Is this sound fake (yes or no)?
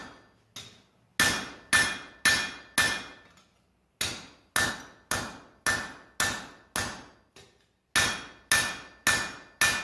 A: no